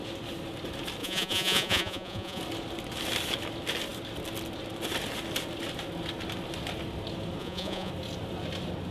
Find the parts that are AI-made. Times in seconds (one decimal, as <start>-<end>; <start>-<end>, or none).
1.0-2.4; 7.4-7.9